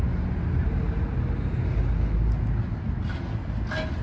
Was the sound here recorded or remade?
recorded